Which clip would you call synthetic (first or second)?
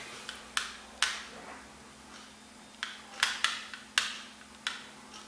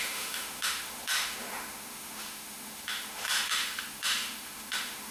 second